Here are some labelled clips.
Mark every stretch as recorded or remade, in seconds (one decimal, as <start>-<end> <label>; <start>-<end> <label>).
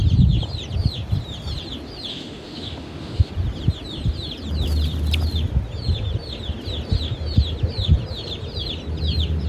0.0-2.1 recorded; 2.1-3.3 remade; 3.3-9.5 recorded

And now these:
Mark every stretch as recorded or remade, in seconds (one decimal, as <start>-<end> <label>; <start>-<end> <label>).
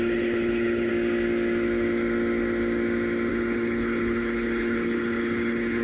0.0-0.9 remade; 0.9-3.3 recorded; 3.3-5.8 remade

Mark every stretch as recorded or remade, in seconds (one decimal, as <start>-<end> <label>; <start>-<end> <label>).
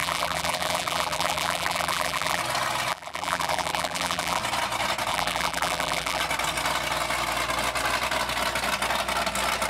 0.0-2.4 remade; 2.4-2.9 recorded; 2.9-4.4 remade; 4.4-5.1 recorded; 5.1-6.2 remade; 6.2-9.7 recorded